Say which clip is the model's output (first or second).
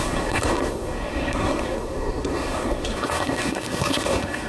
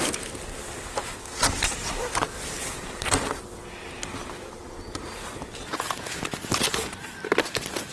first